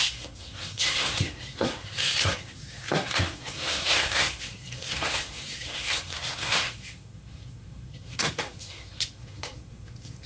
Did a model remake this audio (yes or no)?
yes